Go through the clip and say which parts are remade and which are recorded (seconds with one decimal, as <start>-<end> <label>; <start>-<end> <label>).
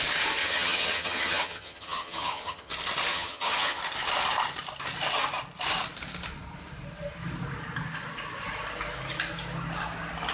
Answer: 0.0-0.4 recorded; 0.4-2.7 remade; 2.7-3.1 recorded; 3.1-3.8 remade; 3.8-10.3 recorded